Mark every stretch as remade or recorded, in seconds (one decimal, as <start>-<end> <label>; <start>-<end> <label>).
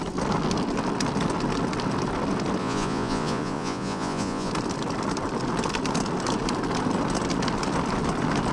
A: 0.0-2.6 recorded; 2.6-4.5 remade; 4.5-8.5 recorded